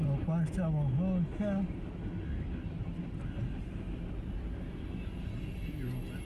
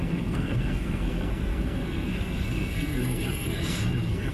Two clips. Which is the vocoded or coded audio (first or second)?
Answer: second